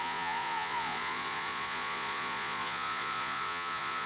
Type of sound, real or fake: fake